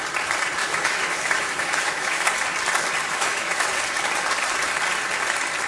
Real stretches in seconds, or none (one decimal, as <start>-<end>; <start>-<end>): 0.0-0.6; 2.3-3.0; 3.7-5.7